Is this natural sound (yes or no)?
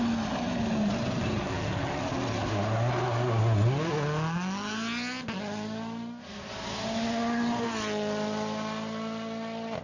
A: yes